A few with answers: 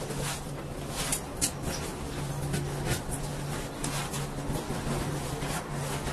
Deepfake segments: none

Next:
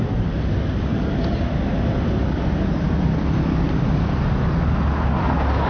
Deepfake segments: none

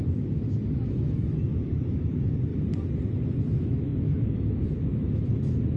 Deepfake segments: 0.0-2.5 (autoencoder, DAC-VAE); 3.4-5.8

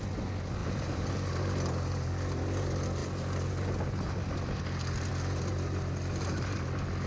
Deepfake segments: 0.6-1.1 (vocoder, BigVGAN v2)

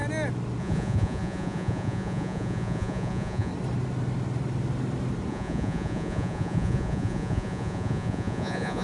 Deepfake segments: 0.6-3.5 (vocoder, Vocos); 5.3-8.8

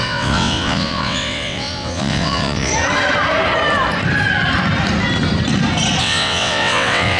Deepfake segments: 0.0-2.7 (vocoder, WaveNeXt); 6.0-7.2

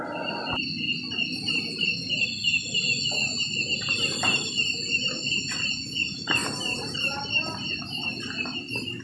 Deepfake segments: none

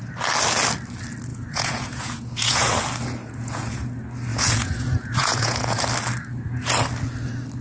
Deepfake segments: 1.3-2.7 (vocoder, Vocos); 3.2-3.8; 4.3-5.8